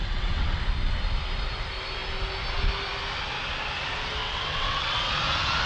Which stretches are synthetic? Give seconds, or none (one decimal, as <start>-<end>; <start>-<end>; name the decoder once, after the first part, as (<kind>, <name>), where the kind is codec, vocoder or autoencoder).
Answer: 0.0-0.6 (vocoder, WaveNeXt); 4.2-5.1